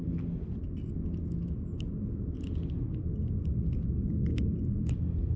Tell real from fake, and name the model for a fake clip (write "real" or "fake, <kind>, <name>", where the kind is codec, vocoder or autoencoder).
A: real